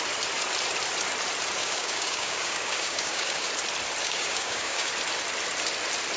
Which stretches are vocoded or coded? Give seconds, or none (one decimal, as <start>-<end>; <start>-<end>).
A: 1.6-3.5; 4.0-4.9